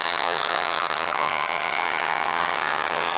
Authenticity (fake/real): fake